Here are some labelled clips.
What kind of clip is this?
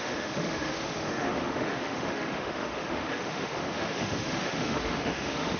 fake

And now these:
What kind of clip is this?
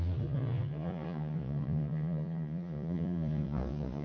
fake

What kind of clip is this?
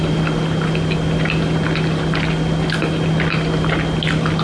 real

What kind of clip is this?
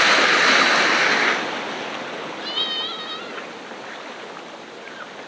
real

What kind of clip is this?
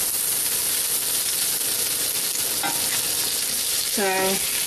real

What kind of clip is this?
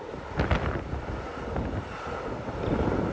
real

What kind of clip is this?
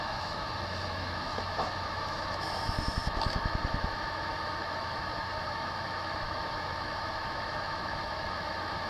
fake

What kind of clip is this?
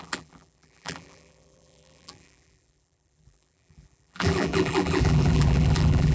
fake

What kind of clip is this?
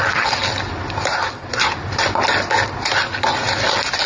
real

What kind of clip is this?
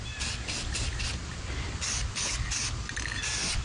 real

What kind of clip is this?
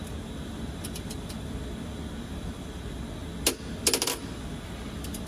real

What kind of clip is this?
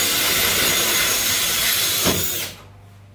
real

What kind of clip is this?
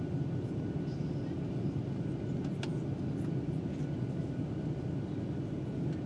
real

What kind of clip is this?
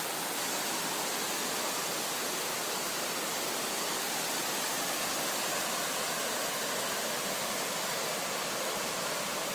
real